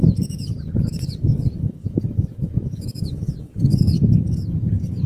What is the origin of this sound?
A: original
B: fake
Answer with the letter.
B